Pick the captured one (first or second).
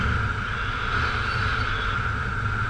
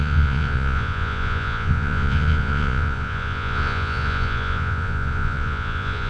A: first